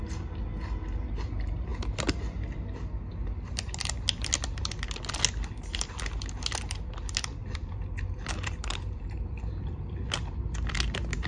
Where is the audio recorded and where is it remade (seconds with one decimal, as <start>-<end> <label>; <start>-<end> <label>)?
0.0-7.4 recorded; 7.4-10.1 remade; 10.1-11.3 recorded